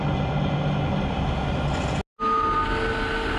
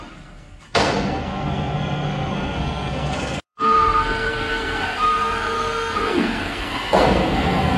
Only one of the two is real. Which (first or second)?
first